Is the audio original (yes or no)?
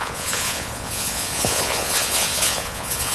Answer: no